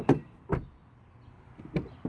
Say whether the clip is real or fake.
real